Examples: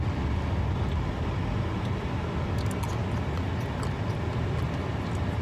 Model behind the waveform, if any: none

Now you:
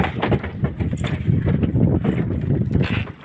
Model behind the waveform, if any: none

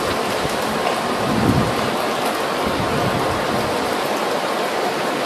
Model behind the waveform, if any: none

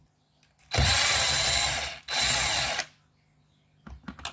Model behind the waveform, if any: none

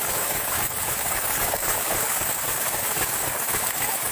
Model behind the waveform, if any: codec, DAC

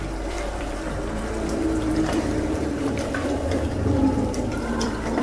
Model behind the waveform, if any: vocoder, BigVGAN v2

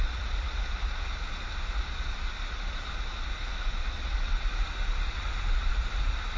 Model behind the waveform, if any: none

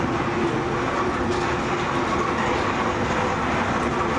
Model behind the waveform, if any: none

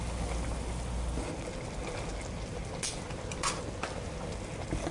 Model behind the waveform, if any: none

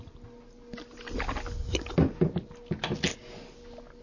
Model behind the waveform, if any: none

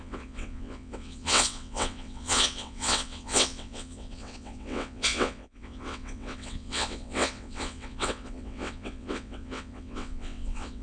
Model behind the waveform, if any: vocoder, WaveNeXt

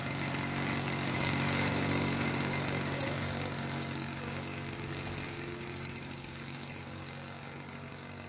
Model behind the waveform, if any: codec, DAC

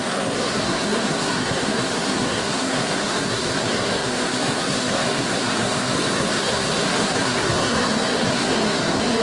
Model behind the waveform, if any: codec, SNAC